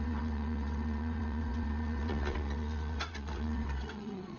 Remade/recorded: remade